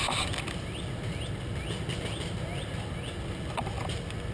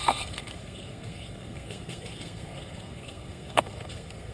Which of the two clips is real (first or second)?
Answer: first